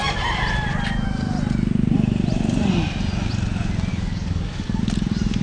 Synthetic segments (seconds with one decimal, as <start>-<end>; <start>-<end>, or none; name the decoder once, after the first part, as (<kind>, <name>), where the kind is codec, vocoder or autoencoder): 3.9-4.8 (codec, DAC)